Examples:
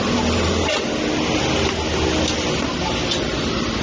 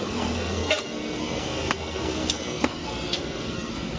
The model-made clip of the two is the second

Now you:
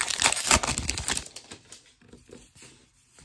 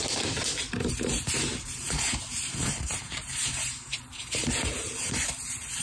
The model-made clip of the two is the second